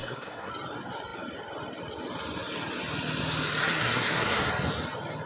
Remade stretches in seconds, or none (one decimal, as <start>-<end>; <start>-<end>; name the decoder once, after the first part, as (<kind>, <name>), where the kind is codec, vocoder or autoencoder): 0.0-0.5 (codec, SNAC); 3.6-4.5